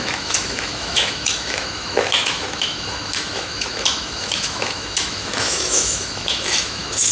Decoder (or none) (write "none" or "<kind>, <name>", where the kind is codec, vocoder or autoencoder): autoencoder, DAC-VAE